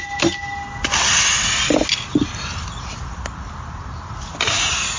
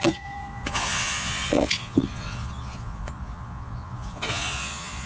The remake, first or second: second